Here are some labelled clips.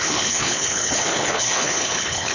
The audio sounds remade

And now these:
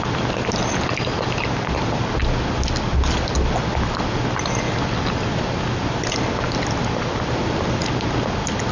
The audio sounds recorded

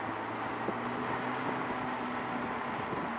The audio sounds recorded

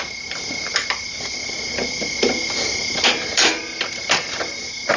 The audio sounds recorded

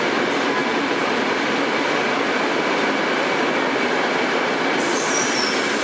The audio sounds recorded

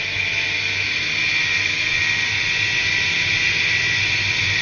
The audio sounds recorded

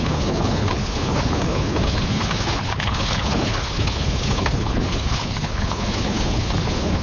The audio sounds remade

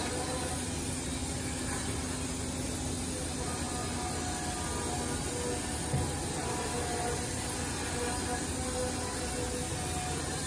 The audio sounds recorded